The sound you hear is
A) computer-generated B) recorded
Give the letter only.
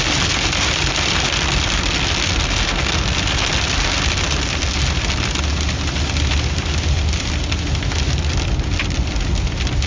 B